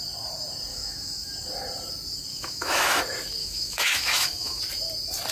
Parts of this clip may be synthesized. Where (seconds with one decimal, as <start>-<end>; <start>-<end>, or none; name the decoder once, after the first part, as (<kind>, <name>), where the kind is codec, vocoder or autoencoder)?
0.7-1.3 (autoencoder, DAC-VAE); 2.3-3.0; 3.4-4.6